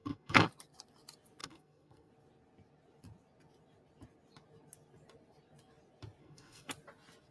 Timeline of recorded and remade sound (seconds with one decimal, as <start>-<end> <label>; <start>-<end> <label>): 0.0-0.5 remade; 0.5-1.4 recorded; 1.4-2.1 remade; 2.1-6.2 recorded; 6.2-6.7 remade; 6.7-7.3 recorded